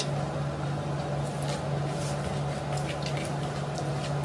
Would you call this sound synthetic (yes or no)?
no